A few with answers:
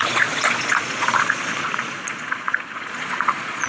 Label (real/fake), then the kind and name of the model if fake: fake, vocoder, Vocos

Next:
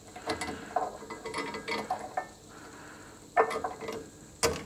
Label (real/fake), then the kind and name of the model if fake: real